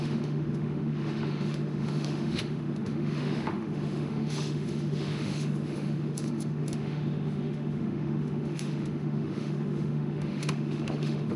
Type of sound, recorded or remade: remade